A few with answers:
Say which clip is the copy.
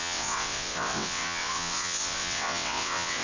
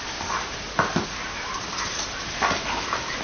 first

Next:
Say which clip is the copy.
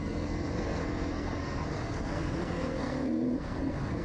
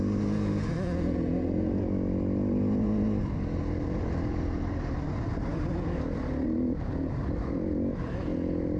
first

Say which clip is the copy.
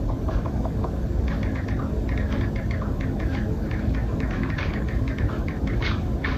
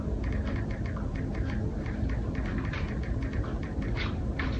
first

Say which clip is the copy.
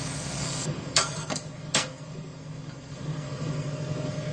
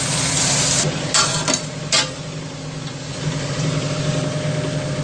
first